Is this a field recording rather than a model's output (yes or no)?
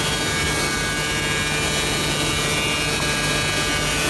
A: yes